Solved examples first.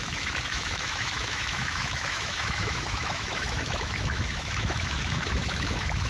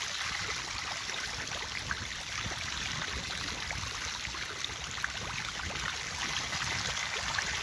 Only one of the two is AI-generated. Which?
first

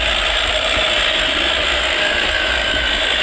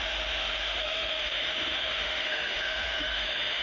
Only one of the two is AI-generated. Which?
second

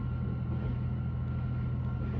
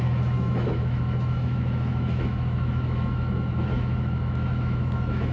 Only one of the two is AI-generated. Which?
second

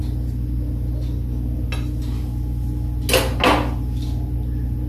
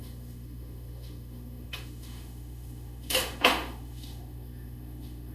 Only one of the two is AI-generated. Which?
second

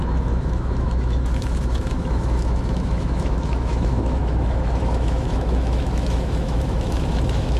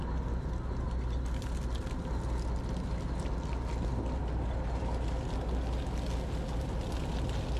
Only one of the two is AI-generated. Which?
first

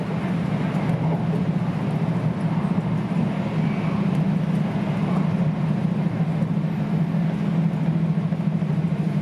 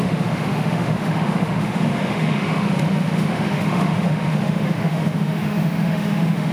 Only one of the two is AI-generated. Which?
second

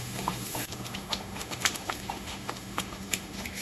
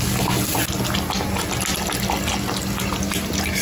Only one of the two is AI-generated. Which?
first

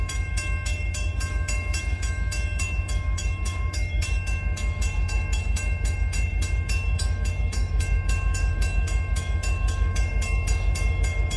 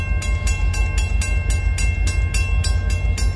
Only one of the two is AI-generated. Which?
first